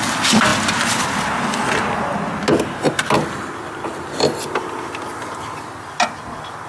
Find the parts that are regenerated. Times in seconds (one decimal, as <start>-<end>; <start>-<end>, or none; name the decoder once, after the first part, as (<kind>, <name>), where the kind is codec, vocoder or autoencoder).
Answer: none